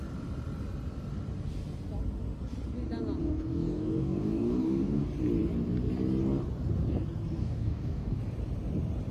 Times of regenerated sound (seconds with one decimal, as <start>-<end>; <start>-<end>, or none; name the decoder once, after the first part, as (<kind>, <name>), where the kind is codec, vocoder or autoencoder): 3.2-5.0 (codec, DAC); 7.4-8.2